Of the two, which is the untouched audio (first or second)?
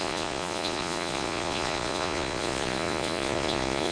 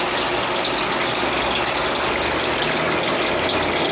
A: second